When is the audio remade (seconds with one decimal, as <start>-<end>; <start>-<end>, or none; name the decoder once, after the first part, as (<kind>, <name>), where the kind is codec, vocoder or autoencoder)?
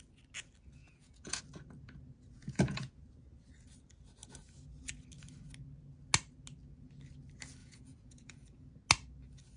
0.8-1.4 (vocoder, Vocos); 2.4-3.0; 7.6-8.7